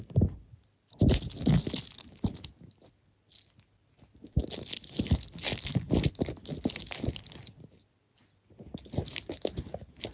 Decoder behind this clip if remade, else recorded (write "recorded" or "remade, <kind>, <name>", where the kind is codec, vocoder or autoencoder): recorded